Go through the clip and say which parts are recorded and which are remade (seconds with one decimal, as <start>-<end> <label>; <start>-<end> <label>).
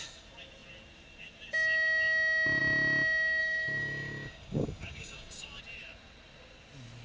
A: 0.0-3.4 recorded; 3.4-5.6 remade; 5.6-7.0 recorded